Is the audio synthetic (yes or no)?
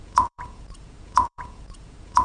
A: yes